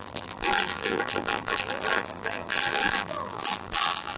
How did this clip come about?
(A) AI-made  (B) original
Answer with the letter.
A